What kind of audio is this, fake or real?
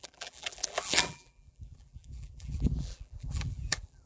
fake